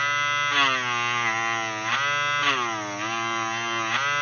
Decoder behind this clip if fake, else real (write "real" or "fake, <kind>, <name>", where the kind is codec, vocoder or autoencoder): real